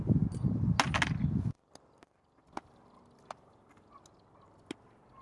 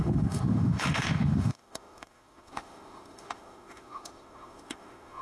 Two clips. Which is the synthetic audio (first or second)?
second